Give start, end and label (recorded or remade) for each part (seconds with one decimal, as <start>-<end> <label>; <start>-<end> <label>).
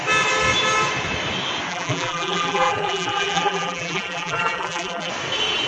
0.0-1.7 recorded; 1.7-5.1 remade; 5.1-5.7 recorded